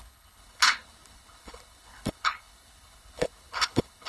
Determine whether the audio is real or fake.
fake